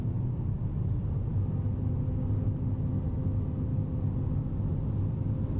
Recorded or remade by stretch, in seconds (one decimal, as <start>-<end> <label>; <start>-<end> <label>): 0.0-5.6 recorded